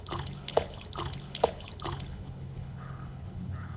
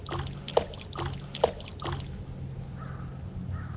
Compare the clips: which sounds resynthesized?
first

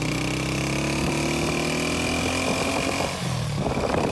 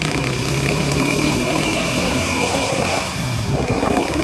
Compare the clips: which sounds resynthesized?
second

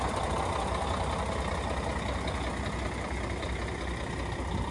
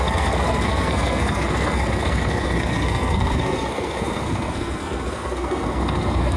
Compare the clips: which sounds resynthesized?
second